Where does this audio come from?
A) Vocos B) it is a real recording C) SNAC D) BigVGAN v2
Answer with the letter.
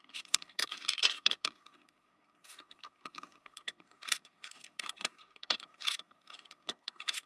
C